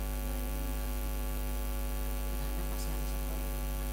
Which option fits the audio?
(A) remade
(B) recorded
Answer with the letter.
B